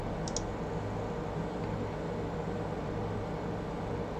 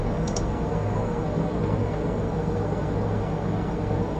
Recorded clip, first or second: first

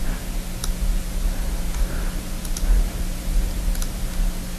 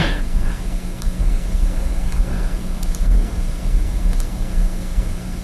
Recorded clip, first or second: first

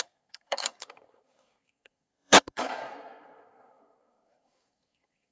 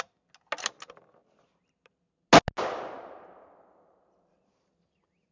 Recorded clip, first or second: second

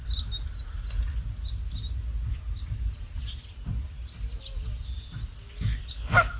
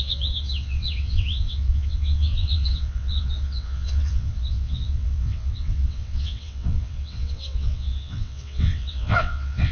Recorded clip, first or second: first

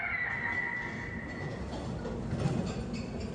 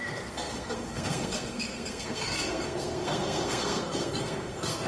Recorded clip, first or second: first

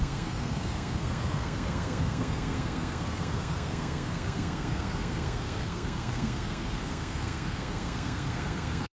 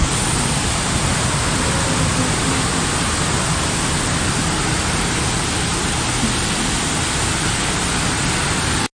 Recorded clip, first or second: second